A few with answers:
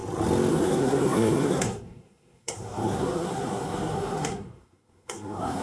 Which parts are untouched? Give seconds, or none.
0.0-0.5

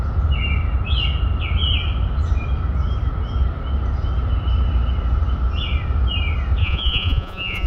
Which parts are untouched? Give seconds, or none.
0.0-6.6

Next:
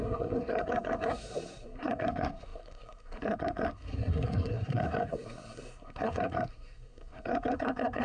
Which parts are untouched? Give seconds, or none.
none

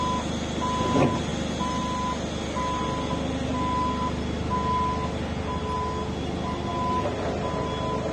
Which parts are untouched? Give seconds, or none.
0.0-3.5; 4.2-8.1